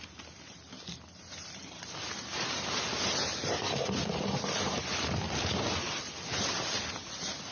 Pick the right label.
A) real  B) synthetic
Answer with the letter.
A